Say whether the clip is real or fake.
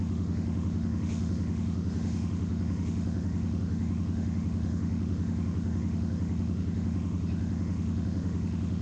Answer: fake